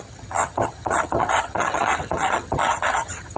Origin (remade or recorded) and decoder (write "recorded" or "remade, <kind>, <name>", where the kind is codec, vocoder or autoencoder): remade, vocoder, HiFi-GAN